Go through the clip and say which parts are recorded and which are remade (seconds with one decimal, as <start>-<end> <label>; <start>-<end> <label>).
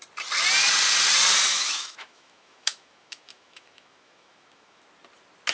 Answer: 0.0-1.5 recorded; 1.5-4.8 remade; 4.8-5.5 recorded